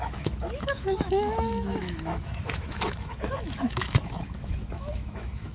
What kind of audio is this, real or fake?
fake